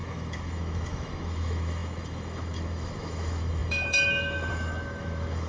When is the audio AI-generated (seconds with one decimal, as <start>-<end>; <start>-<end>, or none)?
0.0-5.5